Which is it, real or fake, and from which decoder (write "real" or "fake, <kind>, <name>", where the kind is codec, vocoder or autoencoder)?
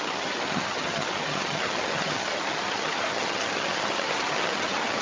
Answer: fake, vocoder, HiFi-GAN